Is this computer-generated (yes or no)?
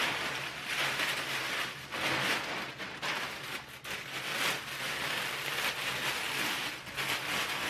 no